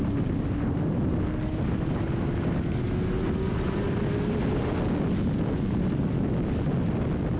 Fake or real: real